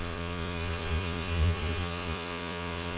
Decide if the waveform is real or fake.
fake